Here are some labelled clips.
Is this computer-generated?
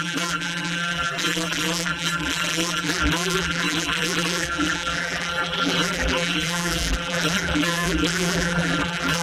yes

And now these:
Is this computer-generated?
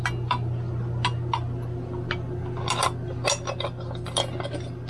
no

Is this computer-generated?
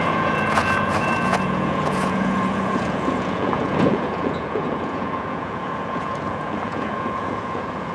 yes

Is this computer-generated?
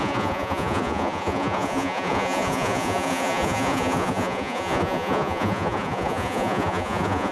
yes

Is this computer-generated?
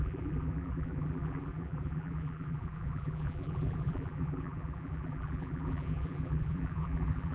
yes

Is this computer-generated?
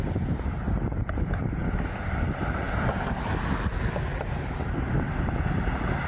no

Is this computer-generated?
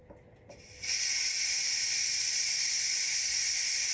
no